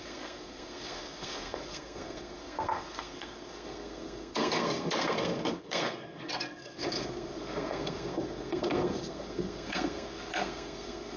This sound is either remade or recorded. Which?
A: remade